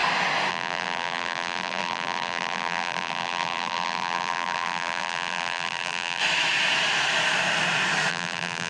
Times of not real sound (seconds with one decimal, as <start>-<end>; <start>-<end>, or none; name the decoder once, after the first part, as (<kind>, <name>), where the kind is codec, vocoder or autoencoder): 0.5-6.2 (vocoder, BigVGAN v2); 8.1-8.7